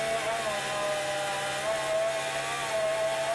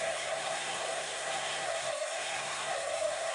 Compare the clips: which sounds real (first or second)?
first